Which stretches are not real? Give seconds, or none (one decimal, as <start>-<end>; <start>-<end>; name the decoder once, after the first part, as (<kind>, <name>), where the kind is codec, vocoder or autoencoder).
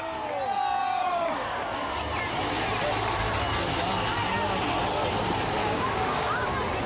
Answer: 0.8-1.9 (codec, DAC); 5.6-6.5